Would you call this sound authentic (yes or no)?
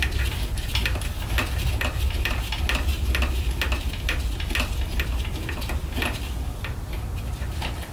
yes